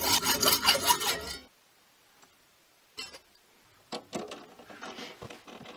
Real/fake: real